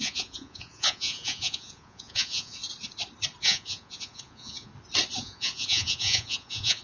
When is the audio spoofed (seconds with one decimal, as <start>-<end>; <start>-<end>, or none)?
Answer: 0.0-2.6; 3.4-4.7; 5.2-6.8